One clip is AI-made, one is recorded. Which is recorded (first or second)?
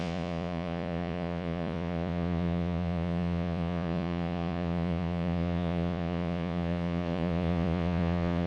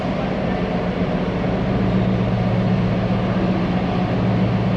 second